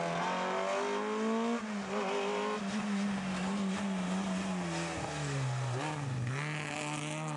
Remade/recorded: recorded